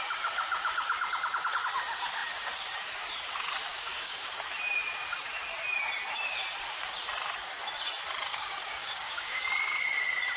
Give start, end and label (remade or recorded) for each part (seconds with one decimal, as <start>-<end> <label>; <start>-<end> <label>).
0.0-3.7 recorded; 3.7-4.3 remade; 4.3-8.3 recorded; 8.3-9.4 remade; 9.4-10.4 recorded